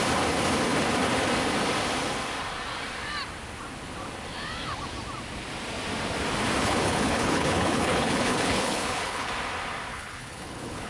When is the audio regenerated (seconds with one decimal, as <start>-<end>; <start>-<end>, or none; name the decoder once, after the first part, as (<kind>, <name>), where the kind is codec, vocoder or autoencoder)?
6.6-9.3 (codec, HILCodec); 9.9-10.9